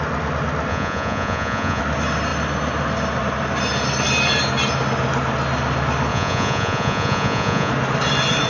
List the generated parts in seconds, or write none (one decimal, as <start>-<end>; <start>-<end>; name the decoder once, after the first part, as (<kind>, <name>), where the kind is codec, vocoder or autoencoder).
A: 0.7-1.8 (vocoder, Vocos); 6.1-7.7